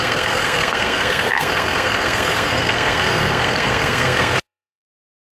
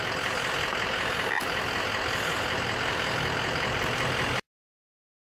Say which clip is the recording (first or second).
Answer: second